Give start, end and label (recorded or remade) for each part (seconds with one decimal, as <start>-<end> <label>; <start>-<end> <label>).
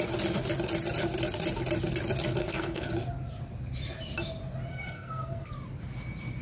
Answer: 0.0-2.4 recorded; 2.4-2.9 remade; 2.9-4.7 recorded; 4.7-5.5 remade; 5.5-6.4 recorded